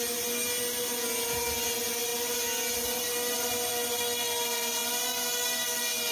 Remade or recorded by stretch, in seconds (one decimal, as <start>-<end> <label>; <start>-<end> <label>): 0.0-6.1 recorded